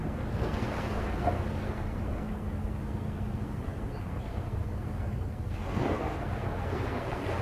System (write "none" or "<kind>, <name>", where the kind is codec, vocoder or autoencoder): codec, SNAC